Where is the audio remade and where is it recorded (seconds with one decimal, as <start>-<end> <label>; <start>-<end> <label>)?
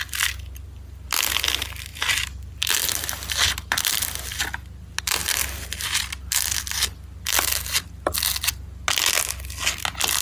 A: 0.0-1.9 recorded; 1.9-4.4 remade; 4.4-5.2 recorded; 5.2-6.6 remade; 6.6-10.2 recorded